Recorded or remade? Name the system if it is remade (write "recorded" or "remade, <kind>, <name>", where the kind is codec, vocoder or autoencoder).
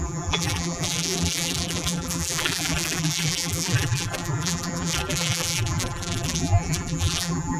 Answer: remade, vocoder, BigVGAN v2